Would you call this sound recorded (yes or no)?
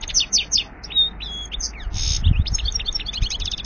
yes